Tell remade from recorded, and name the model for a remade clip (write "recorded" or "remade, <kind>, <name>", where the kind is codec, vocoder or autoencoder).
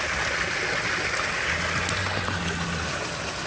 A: recorded